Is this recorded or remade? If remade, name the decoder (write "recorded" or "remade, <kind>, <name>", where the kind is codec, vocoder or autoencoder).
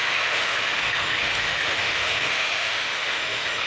remade, autoencoder, DAC-VAE